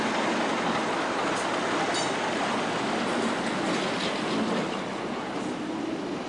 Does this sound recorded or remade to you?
recorded